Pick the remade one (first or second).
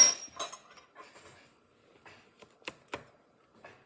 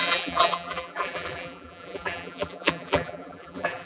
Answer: second